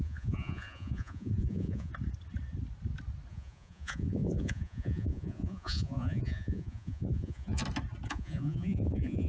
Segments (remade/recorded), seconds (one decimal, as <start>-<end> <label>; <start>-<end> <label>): 0.0-1.9 remade; 1.9-3.3 recorded; 3.3-7.6 remade; 7.6-8.1 recorded; 8.1-9.3 remade